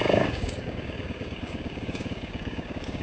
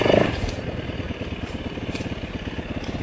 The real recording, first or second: second